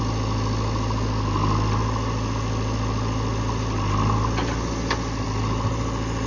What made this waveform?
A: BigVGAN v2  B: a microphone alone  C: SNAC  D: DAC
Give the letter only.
B